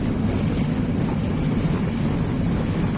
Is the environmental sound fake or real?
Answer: real